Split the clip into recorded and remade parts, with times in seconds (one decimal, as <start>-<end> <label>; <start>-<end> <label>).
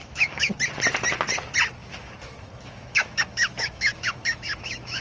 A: 0.0-0.5 remade; 0.5-1.8 recorded; 1.8-5.0 remade